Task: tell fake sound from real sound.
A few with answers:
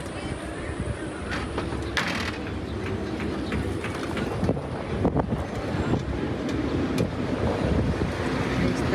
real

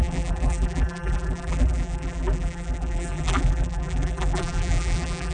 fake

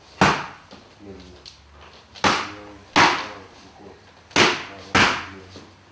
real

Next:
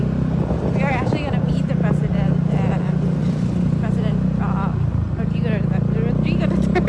real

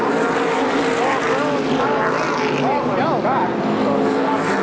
real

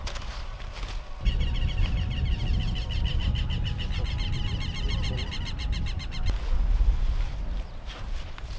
real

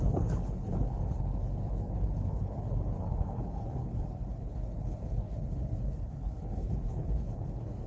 fake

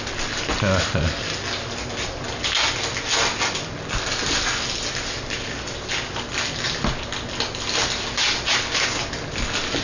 real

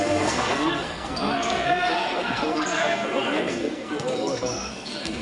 fake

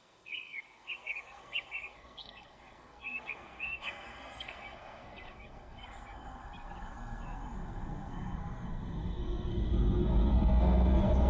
fake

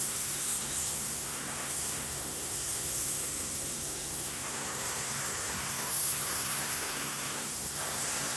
fake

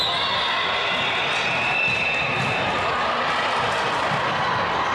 real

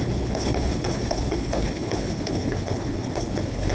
fake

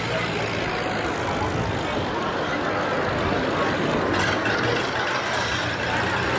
real